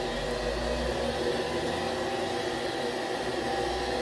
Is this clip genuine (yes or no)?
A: yes